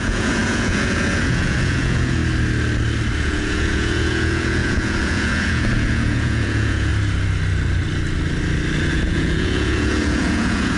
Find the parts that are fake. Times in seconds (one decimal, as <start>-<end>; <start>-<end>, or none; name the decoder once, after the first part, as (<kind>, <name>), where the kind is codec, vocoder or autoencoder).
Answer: 0.0-2.2 (vocoder, Vocos); 3.2-6.9; 8.9-10.8